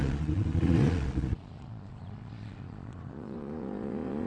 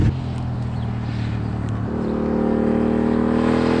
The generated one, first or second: first